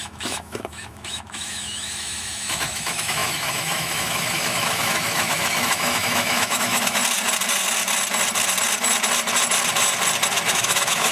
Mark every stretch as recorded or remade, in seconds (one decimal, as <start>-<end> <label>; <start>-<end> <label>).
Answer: 0.0-7.0 remade; 7.0-10.5 recorded; 10.5-11.1 remade